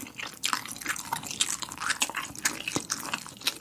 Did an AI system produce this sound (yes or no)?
no